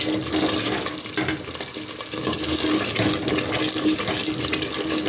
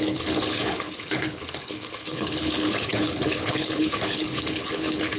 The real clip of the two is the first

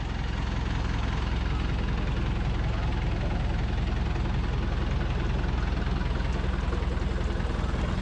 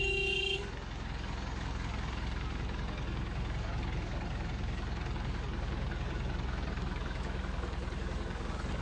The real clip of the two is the first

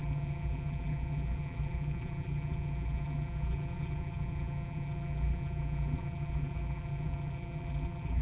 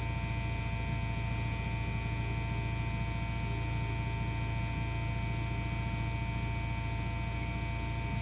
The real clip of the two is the second